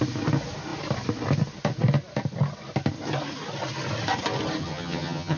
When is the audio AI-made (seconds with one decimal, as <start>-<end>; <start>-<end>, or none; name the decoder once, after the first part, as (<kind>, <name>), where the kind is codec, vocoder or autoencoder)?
4.6-5.4 (vocoder, HiFi-GAN)